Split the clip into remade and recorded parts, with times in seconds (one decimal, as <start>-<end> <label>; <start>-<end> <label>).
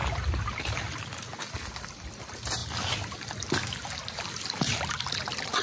0.0-5.6 recorded